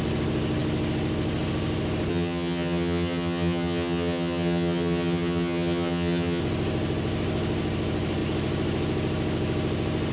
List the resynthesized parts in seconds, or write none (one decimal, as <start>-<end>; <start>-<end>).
2.1-6.4